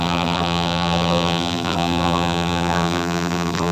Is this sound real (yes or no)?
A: no